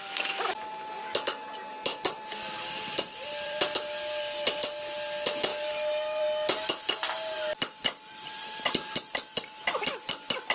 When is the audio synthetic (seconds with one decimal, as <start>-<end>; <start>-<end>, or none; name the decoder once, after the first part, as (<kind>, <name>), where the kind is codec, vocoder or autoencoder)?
1.9-3.6 (vocoder, BigVGAN v2); 8.4-10.5